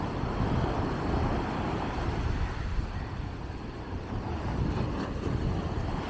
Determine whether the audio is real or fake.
real